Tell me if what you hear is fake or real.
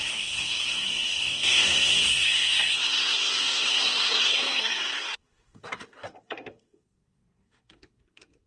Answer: fake